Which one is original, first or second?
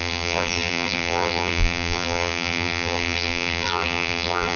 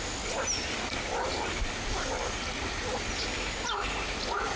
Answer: second